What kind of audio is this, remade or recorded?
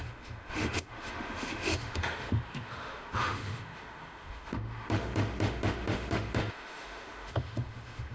remade